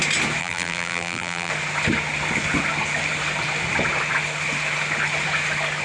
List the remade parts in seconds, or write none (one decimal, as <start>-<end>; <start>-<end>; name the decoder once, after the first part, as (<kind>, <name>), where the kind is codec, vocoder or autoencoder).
0.4-1.5 (vocoder, BigVGAN v2)